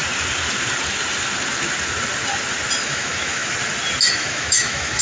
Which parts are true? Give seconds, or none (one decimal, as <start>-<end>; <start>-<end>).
0.0-2.8; 3.4-4.1

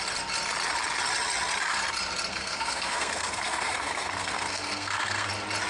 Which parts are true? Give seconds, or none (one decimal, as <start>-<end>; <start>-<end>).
0.0-2.3; 5.3-5.7

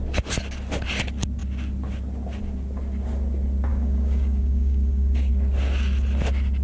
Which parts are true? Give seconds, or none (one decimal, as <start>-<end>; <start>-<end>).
0.0-3.7; 5.3-6.6

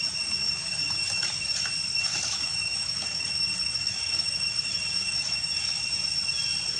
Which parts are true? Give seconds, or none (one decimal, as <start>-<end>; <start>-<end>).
0.0-0.4; 1.0-2.1; 5.9-6.8

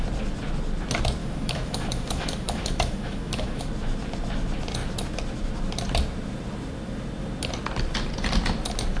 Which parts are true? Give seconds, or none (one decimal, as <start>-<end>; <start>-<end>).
0.0-1.2; 3.6-9.0

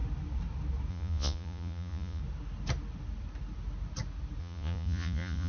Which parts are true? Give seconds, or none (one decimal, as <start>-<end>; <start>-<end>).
0.0-0.9; 2.2-4.4

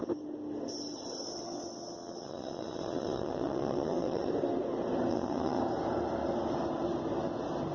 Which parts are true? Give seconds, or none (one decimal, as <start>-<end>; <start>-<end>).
0.0-1.3; 4.3-5.1; 5.6-7.7

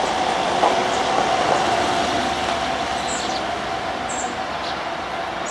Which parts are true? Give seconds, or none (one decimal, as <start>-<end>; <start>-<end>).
0.0-5.5